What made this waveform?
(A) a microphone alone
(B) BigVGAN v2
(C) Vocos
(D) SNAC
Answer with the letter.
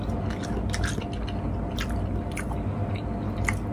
A